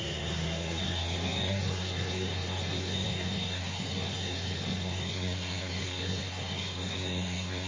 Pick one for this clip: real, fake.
fake